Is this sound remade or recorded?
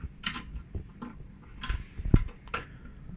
recorded